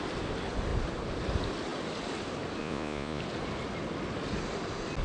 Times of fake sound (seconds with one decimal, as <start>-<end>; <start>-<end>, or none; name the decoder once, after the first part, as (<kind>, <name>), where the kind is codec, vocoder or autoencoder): 2.6-3.2 (vocoder, Vocos)